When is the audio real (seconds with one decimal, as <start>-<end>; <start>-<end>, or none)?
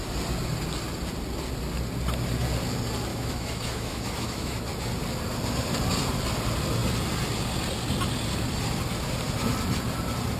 0.0-3.1; 4.7-10.4